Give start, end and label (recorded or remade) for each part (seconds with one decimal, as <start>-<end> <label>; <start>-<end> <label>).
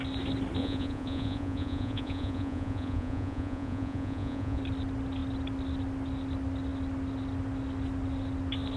0.0-0.6 recorded; 0.6-4.6 remade; 4.6-8.8 recorded